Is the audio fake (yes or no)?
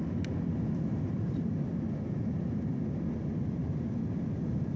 no